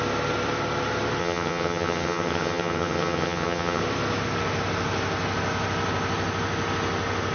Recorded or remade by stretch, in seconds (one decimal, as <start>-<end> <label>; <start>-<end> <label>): 0.0-1.2 recorded; 1.2-3.8 remade; 3.8-7.3 recorded